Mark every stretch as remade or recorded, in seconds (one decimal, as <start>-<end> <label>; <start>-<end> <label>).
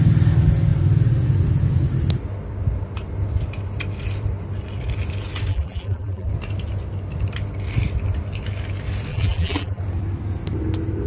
0.0-5.5 recorded; 5.5-6.3 remade; 6.3-9.1 recorded; 9.1-9.8 remade; 9.8-11.1 recorded